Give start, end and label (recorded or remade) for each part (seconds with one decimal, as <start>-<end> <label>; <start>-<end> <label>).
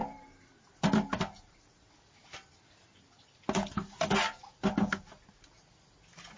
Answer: 0.0-6.4 recorded